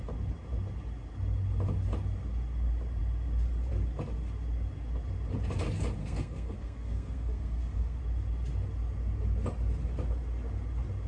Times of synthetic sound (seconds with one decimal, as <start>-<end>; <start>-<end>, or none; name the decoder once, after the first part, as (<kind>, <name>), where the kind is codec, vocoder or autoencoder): 6.0-8.0 (codec, SNAC)